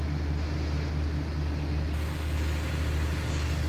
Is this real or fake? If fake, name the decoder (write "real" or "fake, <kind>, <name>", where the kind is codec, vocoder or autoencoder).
real